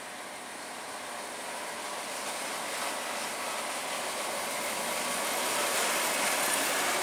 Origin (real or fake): fake